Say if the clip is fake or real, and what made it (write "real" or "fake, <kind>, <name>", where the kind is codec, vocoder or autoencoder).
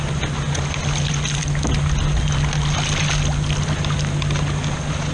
real